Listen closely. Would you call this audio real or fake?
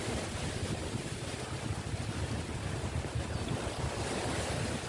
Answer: real